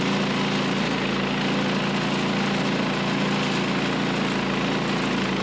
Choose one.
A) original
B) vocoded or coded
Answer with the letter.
A